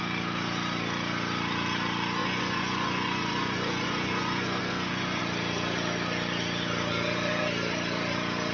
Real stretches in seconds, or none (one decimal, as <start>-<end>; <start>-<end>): 0.0-2.2; 5.2-8.5